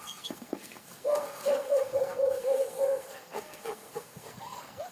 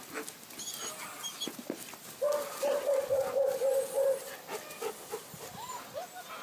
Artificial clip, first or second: first